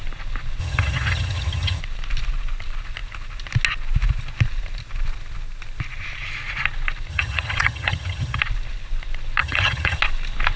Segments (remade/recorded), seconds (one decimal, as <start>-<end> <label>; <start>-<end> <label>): 0.0-0.6 recorded; 0.6-1.8 remade; 1.8-7.1 recorded; 7.1-8.4 remade; 8.4-9.4 recorded; 9.4-10.0 remade; 10.0-10.6 recorded

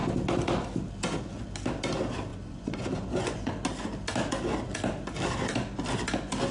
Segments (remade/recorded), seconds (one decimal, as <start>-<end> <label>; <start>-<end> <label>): 0.0-2.3 recorded; 2.3-3.5 remade; 3.5-6.5 recorded

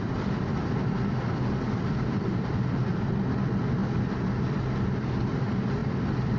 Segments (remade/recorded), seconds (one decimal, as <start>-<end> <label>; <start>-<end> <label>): 0.0-5.8 recorded; 5.8-6.4 remade

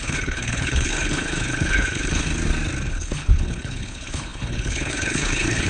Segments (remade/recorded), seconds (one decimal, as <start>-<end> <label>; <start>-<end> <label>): 0.0-2.3 remade; 2.3-2.9 recorded; 2.9-5.7 remade

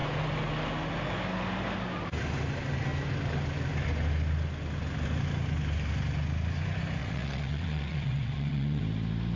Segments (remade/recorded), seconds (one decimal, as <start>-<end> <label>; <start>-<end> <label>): 0.0-7.0 recorded; 7.0-8.8 remade; 8.8-9.4 recorded

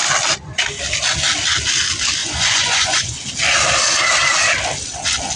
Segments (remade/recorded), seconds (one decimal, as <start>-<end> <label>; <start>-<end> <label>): 0.0-2.2 recorded; 2.2-3.2 remade; 3.2-5.4 recorded

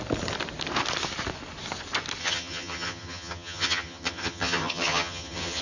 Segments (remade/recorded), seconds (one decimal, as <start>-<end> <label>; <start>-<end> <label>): 0.0-2.2 recorded; 2.2-5.6 remade

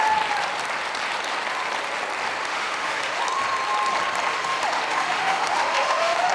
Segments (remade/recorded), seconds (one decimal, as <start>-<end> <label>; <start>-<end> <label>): 0.0-2.4 recorded; 2.4-3.2 remade; 3.2-4.3 recorded; 4.3-6.3 remade